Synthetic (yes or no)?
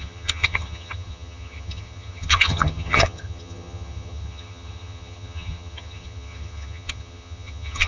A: yes